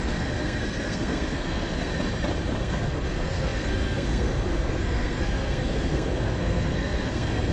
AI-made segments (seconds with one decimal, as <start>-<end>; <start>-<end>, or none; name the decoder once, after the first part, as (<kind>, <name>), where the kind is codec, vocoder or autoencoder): 0.0-1.9 (codec, SNAC); 2.6-7.5